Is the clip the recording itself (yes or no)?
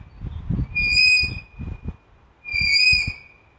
yes